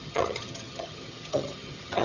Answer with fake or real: fake